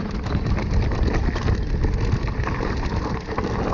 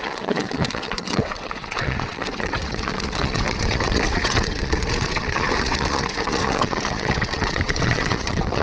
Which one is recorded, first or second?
first